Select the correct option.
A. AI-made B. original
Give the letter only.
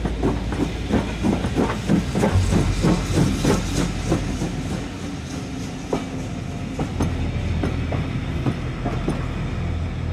B